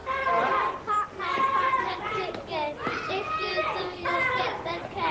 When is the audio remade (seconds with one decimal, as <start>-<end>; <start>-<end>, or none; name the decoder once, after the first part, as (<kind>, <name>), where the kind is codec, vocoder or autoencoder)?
none

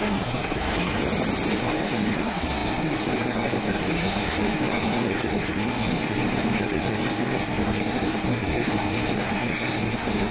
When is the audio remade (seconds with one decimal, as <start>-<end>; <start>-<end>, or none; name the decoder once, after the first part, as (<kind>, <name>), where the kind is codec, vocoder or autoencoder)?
0.0-1.0 (codec, SNAC); 1.5-10.3

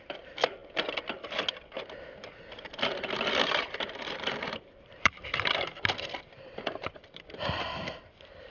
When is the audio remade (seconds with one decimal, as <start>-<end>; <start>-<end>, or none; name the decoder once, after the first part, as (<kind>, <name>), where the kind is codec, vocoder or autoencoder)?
0.0-0.6 (vocoder, BigVGAN v2); 2.5-8.5

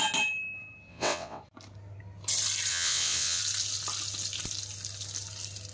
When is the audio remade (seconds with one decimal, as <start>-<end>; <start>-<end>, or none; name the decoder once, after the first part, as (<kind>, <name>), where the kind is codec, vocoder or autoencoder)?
0.9-1.4 (vocoder, WaveNeXt); 2.7-3.4

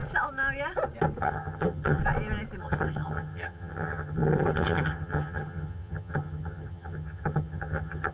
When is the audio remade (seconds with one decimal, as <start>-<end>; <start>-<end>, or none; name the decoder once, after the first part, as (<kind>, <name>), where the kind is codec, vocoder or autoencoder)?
1.2-2.0 (vocoder, HiFi-GAN); 2.6-8.1

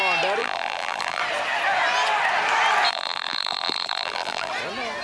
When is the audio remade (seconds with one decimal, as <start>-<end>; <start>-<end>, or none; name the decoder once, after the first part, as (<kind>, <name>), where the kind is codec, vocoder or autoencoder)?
0.4-1.2 (vocoder, BigVGAN v2); 2.9-4.5

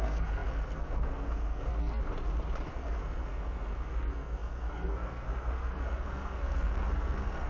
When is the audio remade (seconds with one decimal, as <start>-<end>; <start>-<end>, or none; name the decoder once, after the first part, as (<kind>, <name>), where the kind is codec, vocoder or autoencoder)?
0.0-1.7 (codec, SNAC); 2.7-7.5

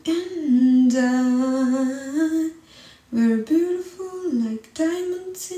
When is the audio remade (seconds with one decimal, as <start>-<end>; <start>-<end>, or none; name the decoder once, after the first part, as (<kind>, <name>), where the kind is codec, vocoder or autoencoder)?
none